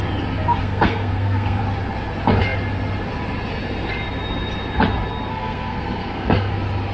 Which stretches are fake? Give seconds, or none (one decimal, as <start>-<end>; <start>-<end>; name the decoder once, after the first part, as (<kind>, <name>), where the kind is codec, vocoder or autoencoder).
0.6-1.6 (codec, SNAC); 5.3-6.5